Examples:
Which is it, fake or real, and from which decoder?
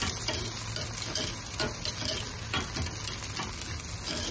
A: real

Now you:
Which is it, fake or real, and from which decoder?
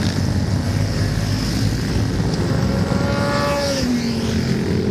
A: real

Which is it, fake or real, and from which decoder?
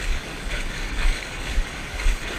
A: fake, codec, DAC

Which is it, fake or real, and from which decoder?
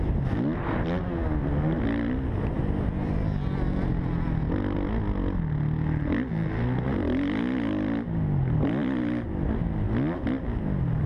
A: real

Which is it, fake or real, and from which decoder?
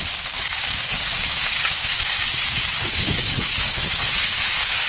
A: fake, codec, DAC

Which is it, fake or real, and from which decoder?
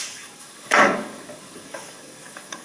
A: fake, codec, DAC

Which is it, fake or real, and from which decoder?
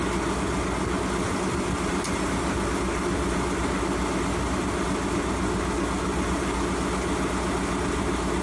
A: real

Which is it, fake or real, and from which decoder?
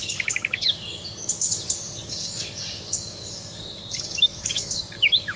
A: fake, codec, DAC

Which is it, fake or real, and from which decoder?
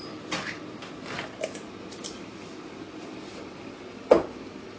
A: real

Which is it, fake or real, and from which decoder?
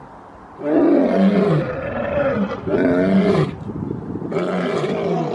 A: real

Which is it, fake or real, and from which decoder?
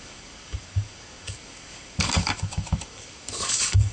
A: fake, codec, DAC